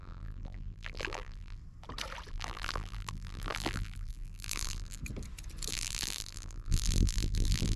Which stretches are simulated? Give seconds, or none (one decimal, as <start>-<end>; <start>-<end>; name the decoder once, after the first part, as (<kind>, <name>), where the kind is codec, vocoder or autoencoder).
0.0-1.6 (vocoder, BigVGAN v2); 2.3-5.0; 5.7-7.8